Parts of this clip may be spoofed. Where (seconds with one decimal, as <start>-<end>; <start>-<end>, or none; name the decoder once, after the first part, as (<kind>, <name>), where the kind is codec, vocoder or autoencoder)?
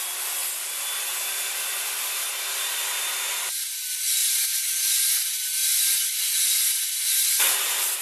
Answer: none